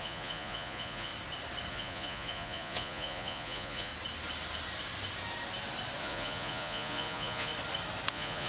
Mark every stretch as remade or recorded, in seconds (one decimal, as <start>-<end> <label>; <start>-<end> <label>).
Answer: 0.0-1.1 remade; 1.1-1.7 recorded; 1.7-3.9 remade; 3.9-6.0 recorded; 6.0-7.5 remade; 7.5-8.1 recorded; 8.1-8.5 remade